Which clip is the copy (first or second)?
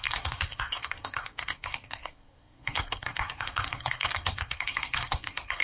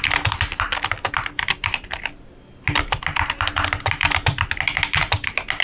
first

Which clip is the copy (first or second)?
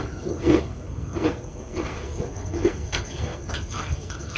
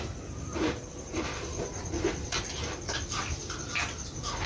first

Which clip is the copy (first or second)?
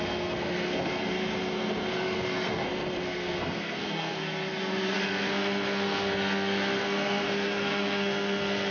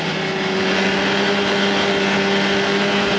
first